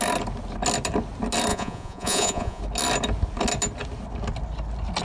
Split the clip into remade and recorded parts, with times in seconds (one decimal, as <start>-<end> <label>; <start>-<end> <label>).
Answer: 0.0-1.5 recorded; 1.5-2.6 remade; 2.6-5.0 recorded